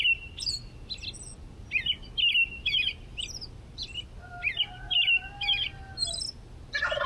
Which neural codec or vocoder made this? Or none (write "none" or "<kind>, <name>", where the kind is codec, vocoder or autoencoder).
none